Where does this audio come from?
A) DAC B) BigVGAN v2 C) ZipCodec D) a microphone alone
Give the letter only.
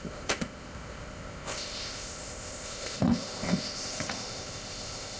C